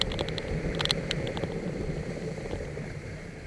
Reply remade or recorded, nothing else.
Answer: remade